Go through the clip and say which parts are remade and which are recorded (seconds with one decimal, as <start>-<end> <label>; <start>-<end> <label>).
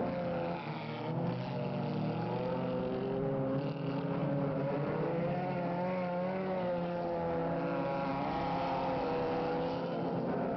0.0-4.2 recorded; 4.2-5.1 remade; 5.1-10.6 recorded